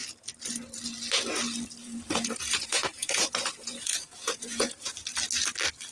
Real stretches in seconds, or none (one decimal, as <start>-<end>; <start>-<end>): 0.0-1.8; 4.9-5.9

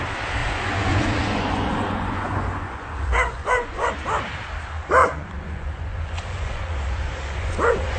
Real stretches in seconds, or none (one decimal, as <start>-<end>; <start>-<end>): 0.0-0.4; 3.9-5.0

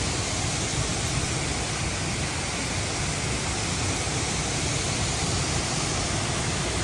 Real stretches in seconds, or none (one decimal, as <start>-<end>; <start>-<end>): 0.0-6.8

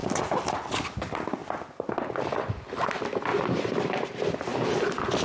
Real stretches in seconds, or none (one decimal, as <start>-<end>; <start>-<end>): 0.0-5.2

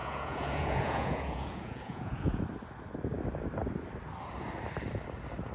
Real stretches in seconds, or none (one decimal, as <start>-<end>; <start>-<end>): 2.4-5.5

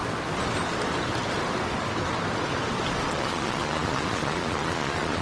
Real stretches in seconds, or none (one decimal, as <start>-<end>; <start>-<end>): 0.0-3.1

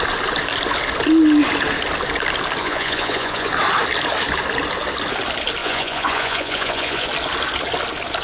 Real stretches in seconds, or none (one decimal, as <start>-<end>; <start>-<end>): 0.0-2.6; 3.5-5.6; 7.1-8.2